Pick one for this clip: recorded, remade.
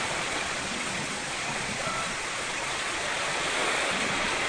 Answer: remade